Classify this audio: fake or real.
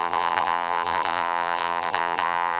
fake